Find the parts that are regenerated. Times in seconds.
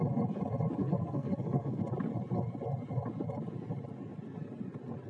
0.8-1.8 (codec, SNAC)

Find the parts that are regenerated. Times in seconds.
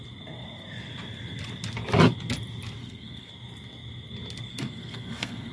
2.8-3.3 (codec, SNAC); 4.5-5.5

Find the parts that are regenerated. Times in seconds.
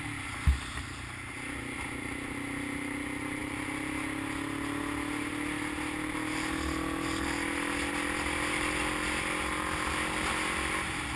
none